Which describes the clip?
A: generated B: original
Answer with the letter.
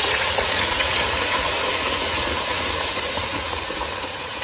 A